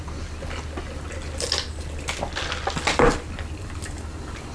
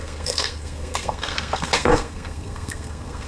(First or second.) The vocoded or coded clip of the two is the second